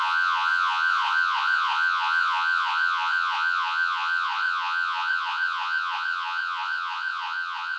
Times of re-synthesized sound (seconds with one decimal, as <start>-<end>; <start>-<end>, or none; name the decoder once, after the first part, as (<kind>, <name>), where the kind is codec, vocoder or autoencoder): 0.0-7.8 (vocoder, Vocos)